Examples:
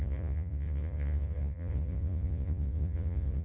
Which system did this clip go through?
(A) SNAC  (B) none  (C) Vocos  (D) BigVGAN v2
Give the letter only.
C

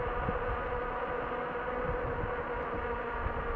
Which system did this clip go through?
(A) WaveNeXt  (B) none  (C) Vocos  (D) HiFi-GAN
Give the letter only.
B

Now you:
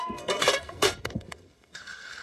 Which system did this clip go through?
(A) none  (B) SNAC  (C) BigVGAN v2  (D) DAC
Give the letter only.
B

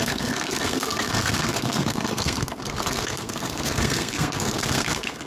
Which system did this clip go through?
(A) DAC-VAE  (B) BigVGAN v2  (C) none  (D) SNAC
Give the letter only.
D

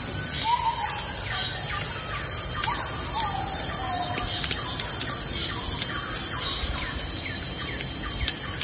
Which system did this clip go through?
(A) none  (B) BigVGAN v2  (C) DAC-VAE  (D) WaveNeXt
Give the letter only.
A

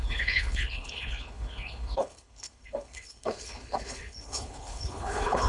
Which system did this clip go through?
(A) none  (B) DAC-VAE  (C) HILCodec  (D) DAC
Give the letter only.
C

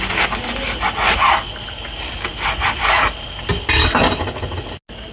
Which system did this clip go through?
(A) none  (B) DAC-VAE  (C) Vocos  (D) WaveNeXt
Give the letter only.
A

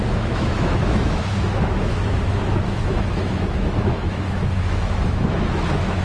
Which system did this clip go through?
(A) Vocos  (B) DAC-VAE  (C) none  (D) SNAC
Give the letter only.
B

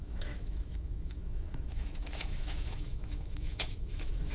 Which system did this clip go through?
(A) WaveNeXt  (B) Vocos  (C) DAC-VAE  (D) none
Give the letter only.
C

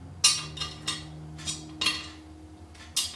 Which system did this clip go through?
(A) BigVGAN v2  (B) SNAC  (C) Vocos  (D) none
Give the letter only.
D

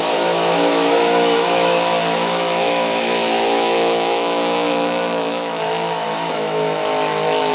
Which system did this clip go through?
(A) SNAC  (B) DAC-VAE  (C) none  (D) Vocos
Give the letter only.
B